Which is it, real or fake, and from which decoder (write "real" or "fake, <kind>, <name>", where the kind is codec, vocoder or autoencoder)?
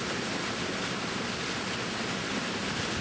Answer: real